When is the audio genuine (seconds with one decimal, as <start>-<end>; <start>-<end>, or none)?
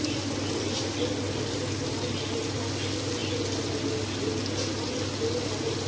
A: 0.0-5.9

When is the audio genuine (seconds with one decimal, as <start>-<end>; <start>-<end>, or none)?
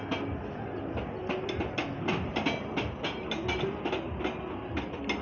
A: 0.0-5.2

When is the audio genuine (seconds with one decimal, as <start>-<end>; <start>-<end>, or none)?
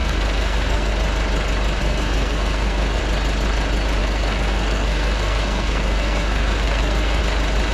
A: 0.9-1.8; 3.0-4.0; 7.2-7.7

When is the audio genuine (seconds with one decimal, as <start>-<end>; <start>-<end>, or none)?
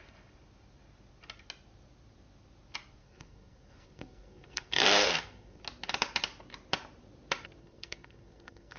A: 0.0-3.0; 5.6-7.6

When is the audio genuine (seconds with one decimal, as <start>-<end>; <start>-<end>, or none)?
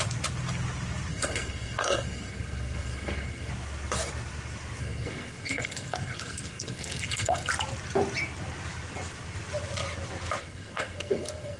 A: 0.0-1.1; 3.5-4.8; 7.5-10.4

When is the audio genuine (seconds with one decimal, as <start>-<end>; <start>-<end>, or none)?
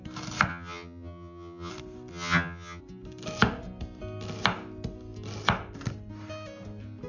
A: 0.0-0.5; 1.7-2.1; 2.8-7.1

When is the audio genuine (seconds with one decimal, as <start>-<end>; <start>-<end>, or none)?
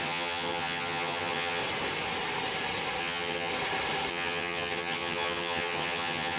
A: 1.6-3.0; 3.5-4.1